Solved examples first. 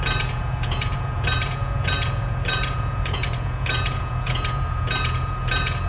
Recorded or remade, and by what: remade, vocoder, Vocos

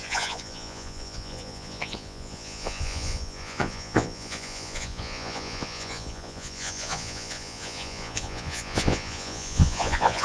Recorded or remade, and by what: remade, vocoder, Vocos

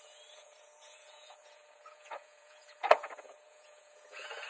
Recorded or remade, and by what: remade, vocoder, Vocos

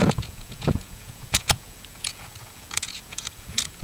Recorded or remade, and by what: remade, vocoder, Vocos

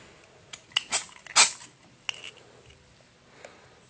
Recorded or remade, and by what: recorded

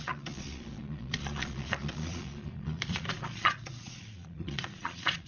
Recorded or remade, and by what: remade, vocoder, Vocos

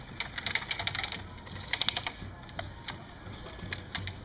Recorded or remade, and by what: recorded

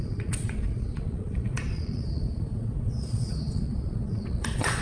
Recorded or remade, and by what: remade, vocoder, Vocos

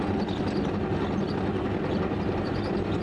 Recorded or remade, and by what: recorded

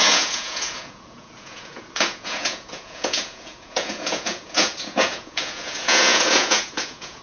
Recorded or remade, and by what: remade, vocoder, Vocos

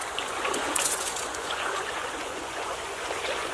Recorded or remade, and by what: remade, vocoder, Vocos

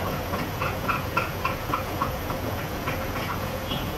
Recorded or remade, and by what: remade, vocoder, Vocos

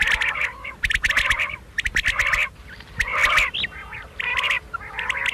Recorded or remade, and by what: recorded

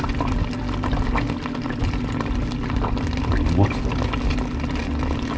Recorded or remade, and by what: recorded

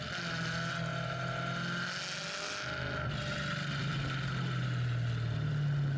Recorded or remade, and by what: recorded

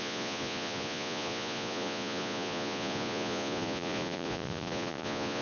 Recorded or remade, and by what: remade, vocoder, Vocos